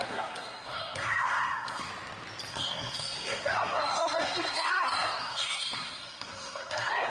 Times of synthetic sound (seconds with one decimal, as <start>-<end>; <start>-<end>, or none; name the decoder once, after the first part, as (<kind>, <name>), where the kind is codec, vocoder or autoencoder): 0.0-1.9 (codec, SNAC); 2.5-7.1